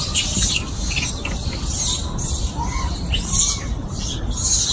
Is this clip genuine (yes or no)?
yes